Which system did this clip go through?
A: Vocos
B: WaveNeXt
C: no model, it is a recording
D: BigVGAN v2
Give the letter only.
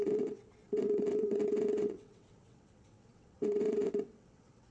B